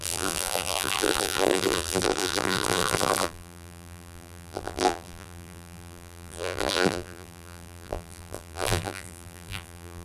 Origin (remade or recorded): remade